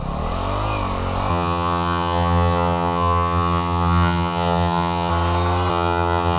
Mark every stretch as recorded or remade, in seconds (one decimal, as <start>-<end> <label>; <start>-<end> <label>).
0.0-1.3 recorded; 1.3-5.1 remade; 5.1-5.7 recorded; 5.7-6.4 remade